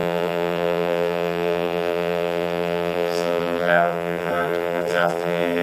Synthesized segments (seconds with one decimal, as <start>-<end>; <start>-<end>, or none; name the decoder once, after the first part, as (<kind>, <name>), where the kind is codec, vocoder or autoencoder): 0.0-5.6 (vocoder, BigVGAN v2)